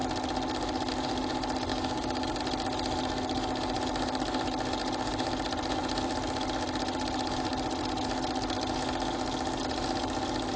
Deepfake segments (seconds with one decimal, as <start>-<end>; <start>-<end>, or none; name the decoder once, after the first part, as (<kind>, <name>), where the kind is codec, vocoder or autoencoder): 1.7-2.4 (codec, DAC)